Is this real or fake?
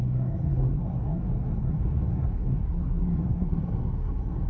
fake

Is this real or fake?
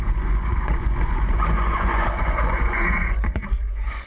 fake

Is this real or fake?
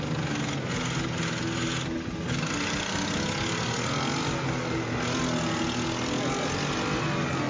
real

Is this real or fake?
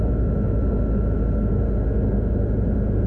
real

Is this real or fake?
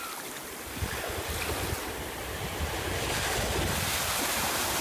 fake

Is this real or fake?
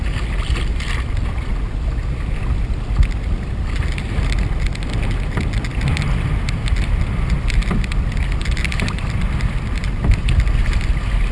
real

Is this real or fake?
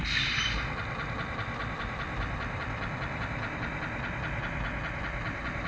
fake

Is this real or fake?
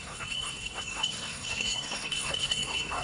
fake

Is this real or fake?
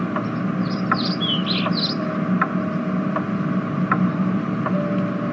real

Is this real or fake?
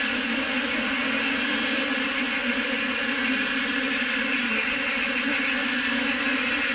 real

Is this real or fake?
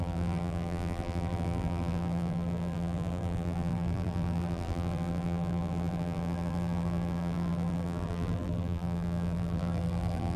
fake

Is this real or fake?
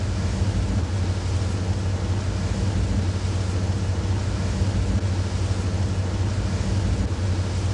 real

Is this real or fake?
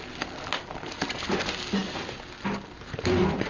real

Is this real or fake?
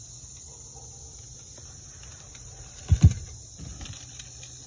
real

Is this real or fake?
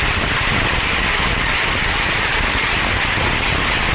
real